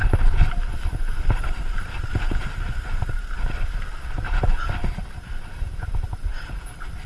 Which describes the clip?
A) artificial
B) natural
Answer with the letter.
A